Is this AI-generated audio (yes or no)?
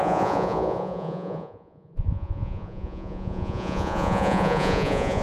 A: yes